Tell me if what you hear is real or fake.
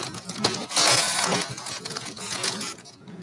fake